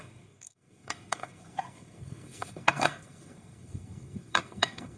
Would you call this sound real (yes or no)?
no